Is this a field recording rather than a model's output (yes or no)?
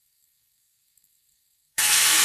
no